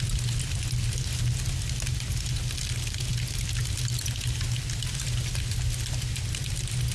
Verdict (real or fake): real